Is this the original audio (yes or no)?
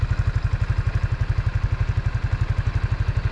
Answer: yes